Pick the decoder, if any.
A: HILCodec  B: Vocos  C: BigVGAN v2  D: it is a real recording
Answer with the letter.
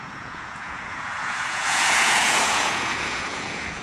B